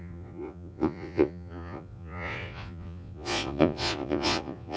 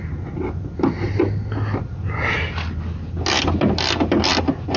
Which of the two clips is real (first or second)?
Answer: second